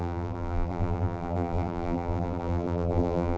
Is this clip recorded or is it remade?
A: remade